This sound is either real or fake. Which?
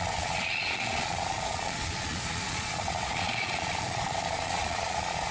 fake